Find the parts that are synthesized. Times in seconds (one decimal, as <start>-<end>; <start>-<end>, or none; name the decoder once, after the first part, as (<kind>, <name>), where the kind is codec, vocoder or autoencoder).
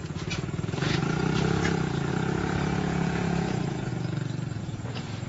0.0-3.9 (vocoder, Vocos); 4.6-5.3